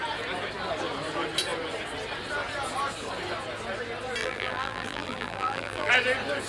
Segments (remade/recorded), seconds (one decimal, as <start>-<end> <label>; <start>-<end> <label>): 0.0-4.2 recorded; 4.2-5.9 remade; 5.9-6.5 recorded